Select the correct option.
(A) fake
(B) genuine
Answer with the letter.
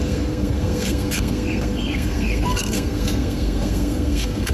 A